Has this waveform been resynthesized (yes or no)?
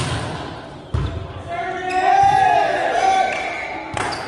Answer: no